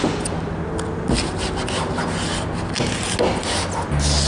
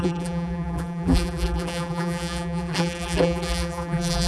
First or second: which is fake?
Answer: second